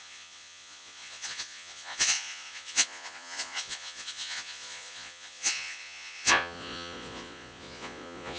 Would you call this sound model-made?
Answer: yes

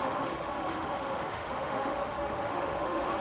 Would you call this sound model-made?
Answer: yes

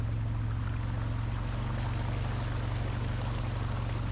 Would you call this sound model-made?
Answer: no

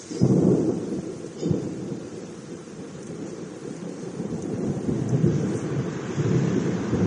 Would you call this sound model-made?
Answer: yes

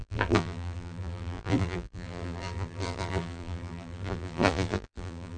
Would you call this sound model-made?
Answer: yes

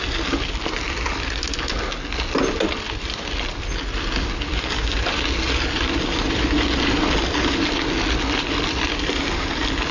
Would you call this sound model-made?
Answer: no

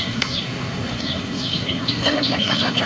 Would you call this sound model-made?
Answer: yes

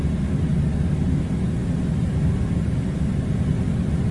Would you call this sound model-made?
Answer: no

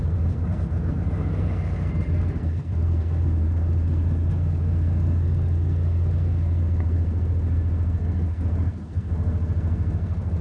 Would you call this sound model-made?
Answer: yes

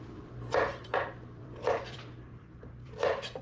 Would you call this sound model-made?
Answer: yes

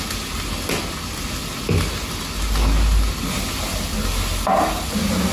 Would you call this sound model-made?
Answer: no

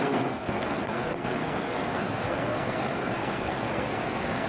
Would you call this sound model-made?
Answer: yes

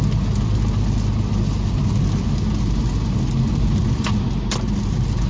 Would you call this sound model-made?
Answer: no